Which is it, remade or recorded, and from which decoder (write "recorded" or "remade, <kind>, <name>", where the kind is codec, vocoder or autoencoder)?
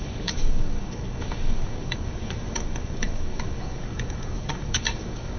remade, codec, DAC